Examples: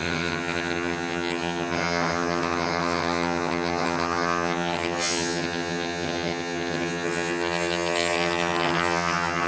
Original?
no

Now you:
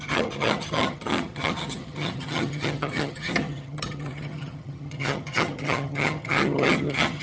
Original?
no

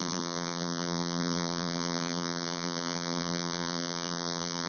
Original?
no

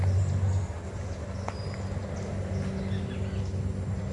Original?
yes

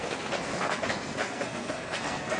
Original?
no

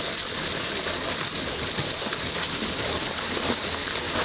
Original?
yes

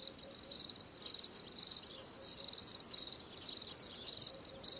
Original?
no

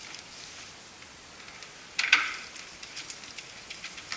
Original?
yes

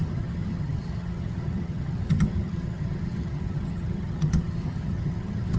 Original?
no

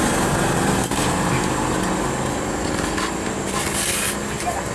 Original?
yes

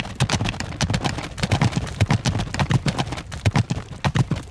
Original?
yes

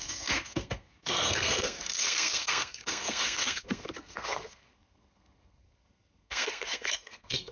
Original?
no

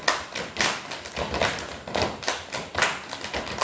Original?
yes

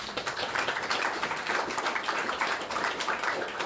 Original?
no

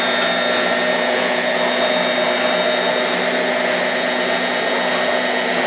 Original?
yes